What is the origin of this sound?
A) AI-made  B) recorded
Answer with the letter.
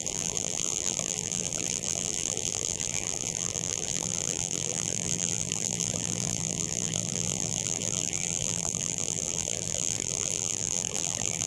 A